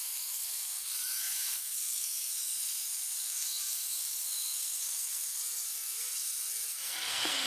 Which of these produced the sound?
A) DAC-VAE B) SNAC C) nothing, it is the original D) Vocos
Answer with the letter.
B